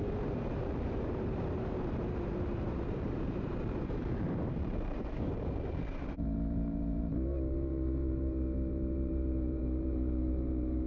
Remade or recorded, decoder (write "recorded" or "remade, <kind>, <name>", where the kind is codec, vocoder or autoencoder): remade, vocoder, BigVGAN v2